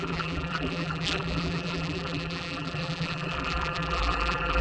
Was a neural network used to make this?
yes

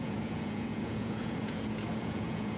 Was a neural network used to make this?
yes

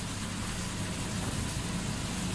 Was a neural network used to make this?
no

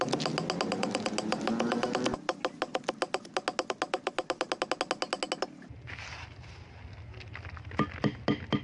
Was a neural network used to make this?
no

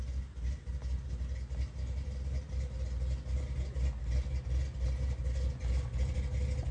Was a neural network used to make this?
no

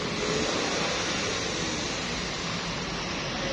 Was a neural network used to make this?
no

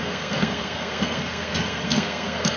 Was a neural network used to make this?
yes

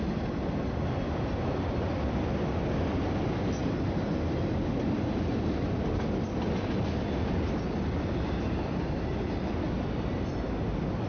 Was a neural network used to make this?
no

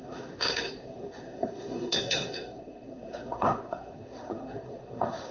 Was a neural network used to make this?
yes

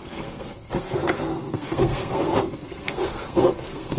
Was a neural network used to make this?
yes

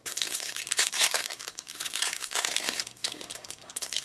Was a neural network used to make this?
yes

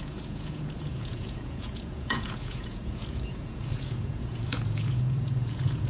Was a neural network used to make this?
yes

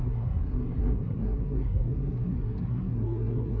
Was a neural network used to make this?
yes